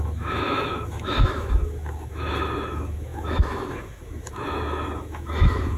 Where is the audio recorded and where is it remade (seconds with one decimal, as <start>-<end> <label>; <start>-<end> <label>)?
0.0-5.8 remade

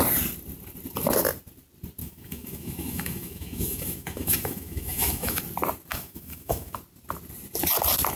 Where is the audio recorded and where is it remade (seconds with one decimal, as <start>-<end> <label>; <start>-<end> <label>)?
0.0-2.0 recorded; 2.0-5.4 remade; 5.4-5.9 recorded; 5.9-6.8 remade; 6.8-8.2 recorded

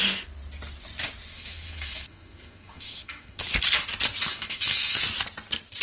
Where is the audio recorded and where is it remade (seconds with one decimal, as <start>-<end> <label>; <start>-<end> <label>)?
0.0-1.3 recorded; 1.3-3.4 remade; 3.4-4.3 recorded; 4.3-5.0 remade; 5.0-5.8 recorded

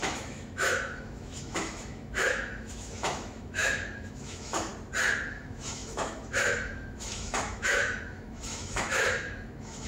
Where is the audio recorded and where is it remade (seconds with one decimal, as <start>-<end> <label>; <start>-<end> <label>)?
0.0-4.7 remade; 4.7-5.3 recorded; 5.3-9.9 remade